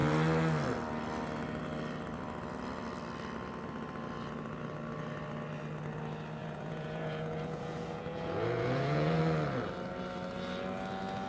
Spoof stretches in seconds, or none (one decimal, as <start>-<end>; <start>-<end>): 6.4-9.2